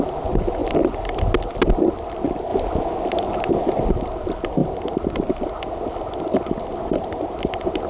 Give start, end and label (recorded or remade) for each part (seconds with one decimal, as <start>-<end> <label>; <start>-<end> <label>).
0.0-7.9 recorded